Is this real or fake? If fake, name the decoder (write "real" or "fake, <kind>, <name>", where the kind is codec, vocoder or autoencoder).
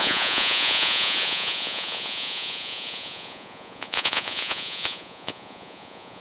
fake, vocoder, Vocos